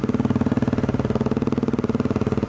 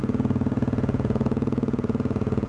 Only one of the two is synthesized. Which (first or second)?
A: second